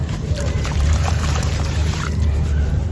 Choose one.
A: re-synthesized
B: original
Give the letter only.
A